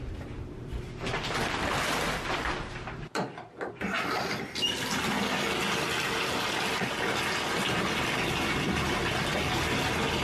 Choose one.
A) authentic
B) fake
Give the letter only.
A